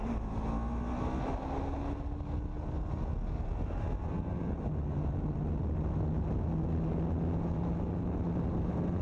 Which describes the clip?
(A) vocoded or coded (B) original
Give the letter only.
B